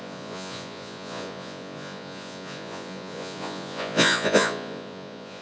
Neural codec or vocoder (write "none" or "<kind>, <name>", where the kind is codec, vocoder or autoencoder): vocoder, Vocos